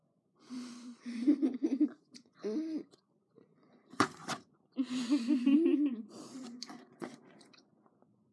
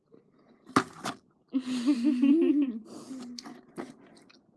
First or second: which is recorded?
second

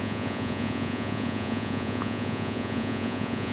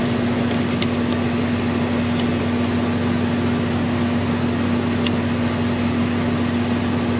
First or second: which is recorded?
second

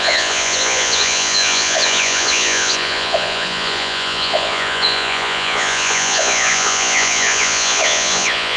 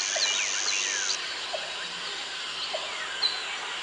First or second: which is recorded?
second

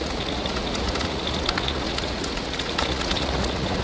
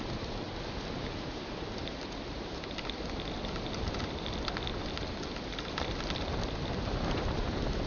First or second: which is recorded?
second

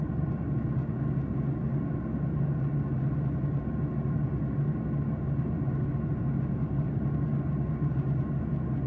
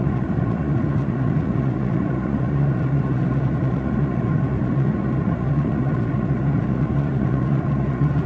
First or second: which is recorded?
first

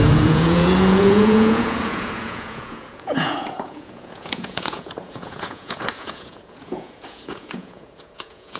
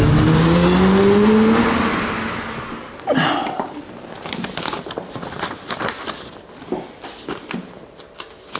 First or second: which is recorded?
second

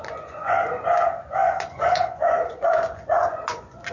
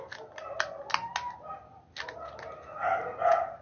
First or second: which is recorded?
second